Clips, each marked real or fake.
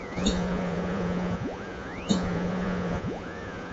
fake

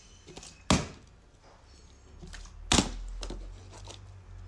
real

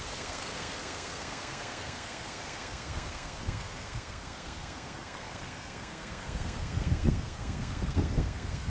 fake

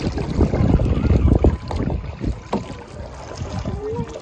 real